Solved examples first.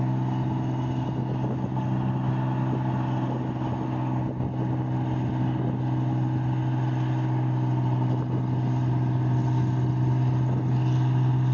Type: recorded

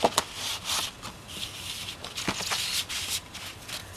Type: recorded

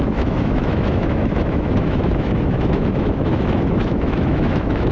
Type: remade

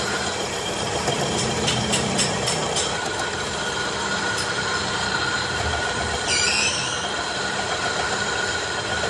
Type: remade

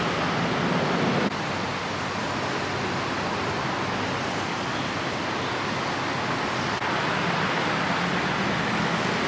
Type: recorded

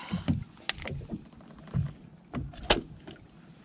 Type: recorded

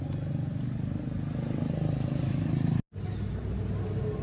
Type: recorded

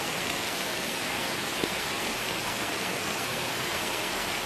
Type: remade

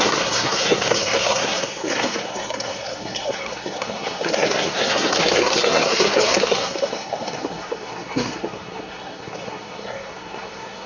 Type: remade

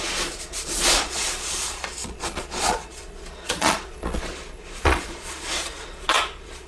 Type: remade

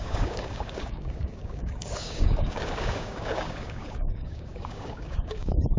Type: remade